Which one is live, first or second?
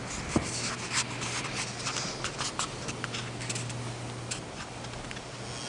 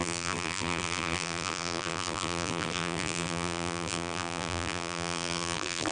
first